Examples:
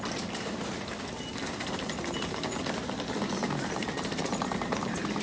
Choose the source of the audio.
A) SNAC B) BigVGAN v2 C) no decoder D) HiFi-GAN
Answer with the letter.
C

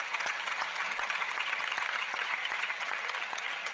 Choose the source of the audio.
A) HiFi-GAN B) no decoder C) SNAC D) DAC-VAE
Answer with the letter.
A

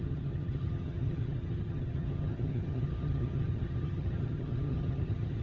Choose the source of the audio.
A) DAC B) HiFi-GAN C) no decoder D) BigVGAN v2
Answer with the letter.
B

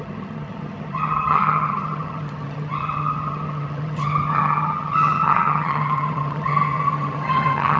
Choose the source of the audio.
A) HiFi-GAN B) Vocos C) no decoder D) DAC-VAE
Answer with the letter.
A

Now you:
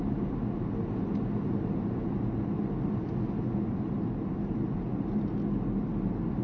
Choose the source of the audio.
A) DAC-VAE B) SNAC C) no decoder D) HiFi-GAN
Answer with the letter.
C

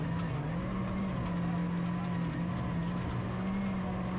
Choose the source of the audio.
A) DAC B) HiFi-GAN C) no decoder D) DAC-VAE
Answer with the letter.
C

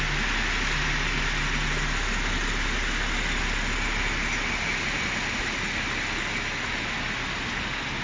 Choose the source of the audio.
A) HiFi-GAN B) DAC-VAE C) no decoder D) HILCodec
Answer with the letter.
C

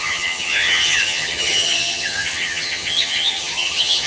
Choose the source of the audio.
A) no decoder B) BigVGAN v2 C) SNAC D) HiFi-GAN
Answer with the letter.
D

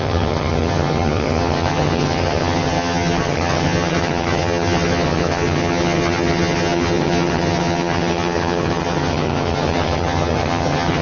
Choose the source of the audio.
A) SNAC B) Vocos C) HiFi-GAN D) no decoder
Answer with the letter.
C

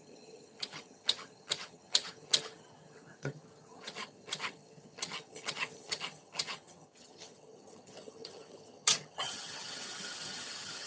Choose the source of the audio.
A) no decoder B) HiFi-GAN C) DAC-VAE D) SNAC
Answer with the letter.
B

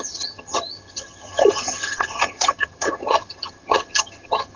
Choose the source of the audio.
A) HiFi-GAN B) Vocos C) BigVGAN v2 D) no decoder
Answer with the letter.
A